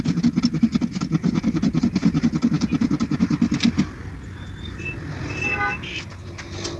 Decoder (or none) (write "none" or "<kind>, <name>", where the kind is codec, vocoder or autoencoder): none